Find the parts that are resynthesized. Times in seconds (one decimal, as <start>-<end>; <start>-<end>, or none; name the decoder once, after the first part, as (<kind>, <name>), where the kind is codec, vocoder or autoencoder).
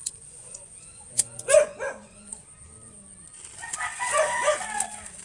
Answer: 0.0-2.4 (vocoder, Vocos); 3.9-4.6